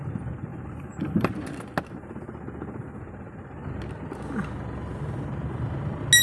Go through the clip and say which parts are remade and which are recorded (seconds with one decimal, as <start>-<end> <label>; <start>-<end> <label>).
0.0-0.5 recorded; 0.5-1.3 remade; 1.3-6.2 recorded